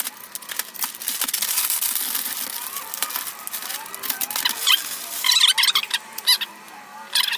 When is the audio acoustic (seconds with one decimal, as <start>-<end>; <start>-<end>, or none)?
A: 0.0-7.4